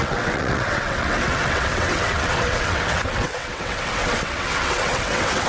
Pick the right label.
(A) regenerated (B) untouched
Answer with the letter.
A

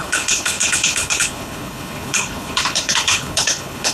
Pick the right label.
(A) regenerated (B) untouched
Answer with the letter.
A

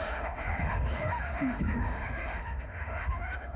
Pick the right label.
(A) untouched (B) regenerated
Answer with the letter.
B